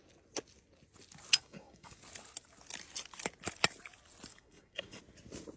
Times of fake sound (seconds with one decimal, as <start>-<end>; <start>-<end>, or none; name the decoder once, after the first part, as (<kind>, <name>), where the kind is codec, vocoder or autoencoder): 1.4-2.0 (codec, DAC); 4.3-5.0